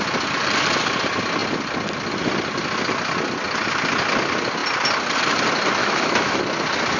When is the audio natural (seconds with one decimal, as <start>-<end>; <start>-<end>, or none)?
0.0-5.8; 6.4-7.0